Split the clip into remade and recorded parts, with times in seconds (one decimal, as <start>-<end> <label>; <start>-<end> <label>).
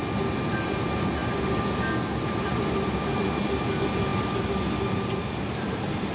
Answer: 0.0-6.1 recorded